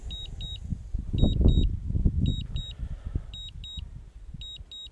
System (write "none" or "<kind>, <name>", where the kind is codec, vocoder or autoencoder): none